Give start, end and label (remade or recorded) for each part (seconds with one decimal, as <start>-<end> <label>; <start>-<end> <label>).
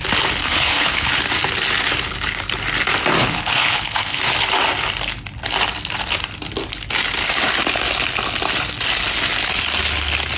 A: 0.0-0.4 recorded; 0.4-1.2 remade; 1.2-3.2 recorded; 3.2-4.2 remade; 4.2-10.4 recorded